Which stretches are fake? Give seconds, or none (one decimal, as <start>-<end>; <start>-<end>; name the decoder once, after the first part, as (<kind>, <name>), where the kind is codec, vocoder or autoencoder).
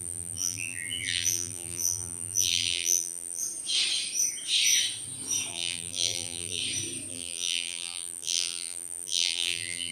0.0-3.4 (vocoder, BigVGAN v2); 5.5-6.6; 7.1-9.9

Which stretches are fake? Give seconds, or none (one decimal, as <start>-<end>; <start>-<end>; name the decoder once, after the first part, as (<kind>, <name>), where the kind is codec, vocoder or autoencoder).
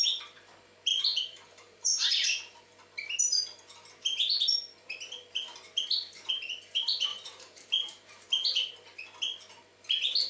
0.9-2.7 (vocoder, BigVGAN v2); 7.1-8.3